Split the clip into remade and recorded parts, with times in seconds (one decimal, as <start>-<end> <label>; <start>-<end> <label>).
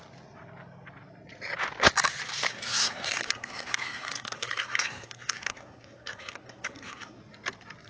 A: 0.0-2.5 recorded; 2.5-7.2 remade; 7.2-7.9 recorded